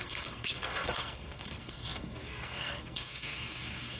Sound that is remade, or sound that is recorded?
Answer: remade